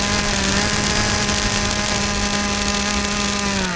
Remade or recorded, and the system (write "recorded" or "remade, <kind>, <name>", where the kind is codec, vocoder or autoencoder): recorded